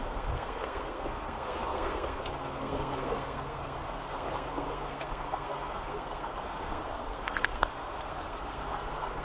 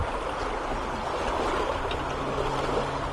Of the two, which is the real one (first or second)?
second